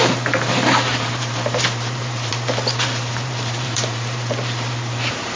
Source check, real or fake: fake